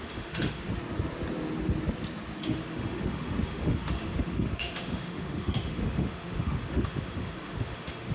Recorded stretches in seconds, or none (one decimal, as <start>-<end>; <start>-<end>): 0.7-2.4